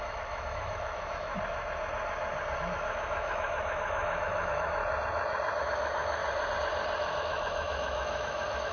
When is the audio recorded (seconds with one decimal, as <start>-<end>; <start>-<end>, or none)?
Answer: 1.3-2.6; 4.8-5.6; 6.2-7.2